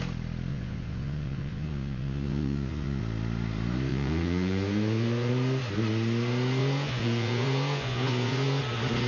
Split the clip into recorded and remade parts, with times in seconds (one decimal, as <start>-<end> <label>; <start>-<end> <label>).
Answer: 0.0-0.5 recorded; 0.5-3.0 remade; 3.0-3.9 recorded; 3.9-5.3 remade; 5.3-6.6 recorded; 6.6-8.6 remade; 8.6-9.1 recorded

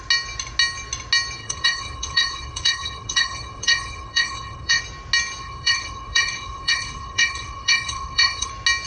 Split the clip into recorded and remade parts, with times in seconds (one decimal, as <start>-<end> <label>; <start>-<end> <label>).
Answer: 0.0-1.4 recorded; 1.4-4.8 remade; 4.8-5.4 recorded; 5.4-8.5 remade; 8.5-8.9 recorded

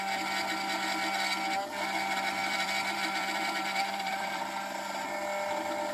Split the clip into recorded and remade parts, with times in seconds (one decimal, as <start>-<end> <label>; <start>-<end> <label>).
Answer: 0.0-2.4 recorded; 2.4-4.4 remade; 4.4-5.9 recorded

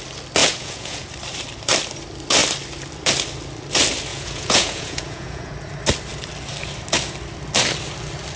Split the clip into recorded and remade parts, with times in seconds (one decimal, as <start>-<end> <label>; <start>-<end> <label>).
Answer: 0.0-0.4 recorded; 0.4-1.1 remade; 1.1-4.1 recorded; 4.1-5.5 remade; 5.5-8.4 recorded